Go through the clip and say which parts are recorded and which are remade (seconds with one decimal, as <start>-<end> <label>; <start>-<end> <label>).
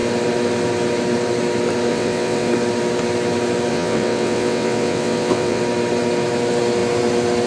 0.0-1.9 recorded; 1.9-2.5 remade; 2.5-3.7 recorded; 3.7-5.6 remade; 5.6-7.5 recorded